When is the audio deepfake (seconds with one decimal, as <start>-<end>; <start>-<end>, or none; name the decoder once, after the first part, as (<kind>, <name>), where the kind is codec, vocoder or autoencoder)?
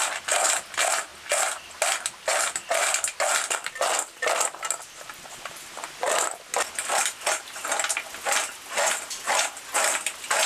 none